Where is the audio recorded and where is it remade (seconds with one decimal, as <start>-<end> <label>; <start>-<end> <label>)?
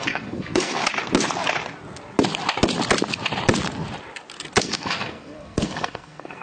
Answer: 0.0-0.8 remade; 0.8-4.6 recorded; 4.6-6.4 remade